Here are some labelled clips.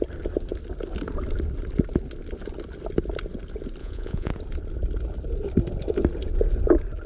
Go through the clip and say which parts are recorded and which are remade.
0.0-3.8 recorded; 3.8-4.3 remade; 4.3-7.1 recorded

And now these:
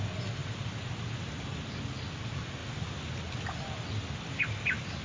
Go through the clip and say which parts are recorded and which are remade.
0.0-5.0 recorded

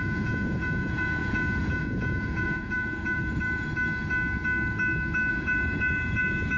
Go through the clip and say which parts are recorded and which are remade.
0.0-3.7 remade; 3.7-5.3 recorded; 5.3-6.6 remade

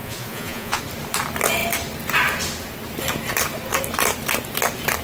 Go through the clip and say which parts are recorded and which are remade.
0.0-0.8 remade; 0.8-5.0 recorded

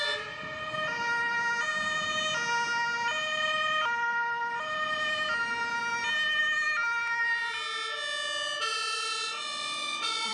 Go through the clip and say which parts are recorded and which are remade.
0.0-8.7 recorded; 8.7-10.3 remade